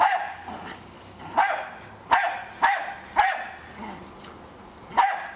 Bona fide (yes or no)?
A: yes